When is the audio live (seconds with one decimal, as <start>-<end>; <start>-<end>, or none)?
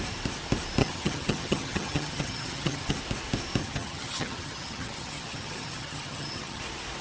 0.0-0.8; 3.0-3.6; 6.6-7.0